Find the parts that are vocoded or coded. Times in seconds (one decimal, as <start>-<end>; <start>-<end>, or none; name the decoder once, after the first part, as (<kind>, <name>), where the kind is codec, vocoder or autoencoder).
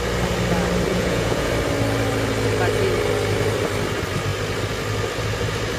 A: 0.9-1.5 (vocoder, Vocos)